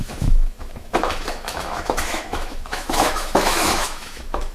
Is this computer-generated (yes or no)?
yes